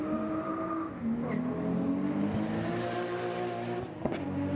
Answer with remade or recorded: recorded